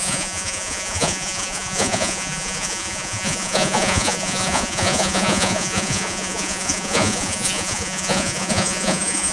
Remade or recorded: remade